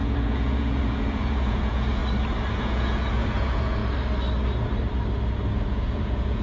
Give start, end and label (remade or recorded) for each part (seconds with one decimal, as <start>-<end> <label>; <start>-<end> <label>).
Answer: 0.0-2.0 remade; 2.0-2.5 recorded; 2.5-3.8 remade; 3.8-5.7 recorded; 5.7-6.4 remade